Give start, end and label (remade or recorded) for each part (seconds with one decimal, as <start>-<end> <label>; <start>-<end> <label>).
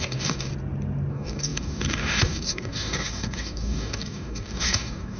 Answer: 0.0-0.5 remade; 0.5-1.1 recorded; 1.1-5.2 remade